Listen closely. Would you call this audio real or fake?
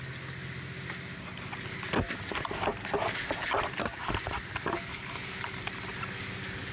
real